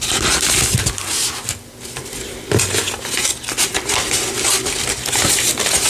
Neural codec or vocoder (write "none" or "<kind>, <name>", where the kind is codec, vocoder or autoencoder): none